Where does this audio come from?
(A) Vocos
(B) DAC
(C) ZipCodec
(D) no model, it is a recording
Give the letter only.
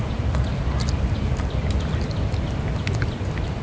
D